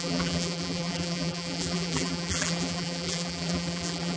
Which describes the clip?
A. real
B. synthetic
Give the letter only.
B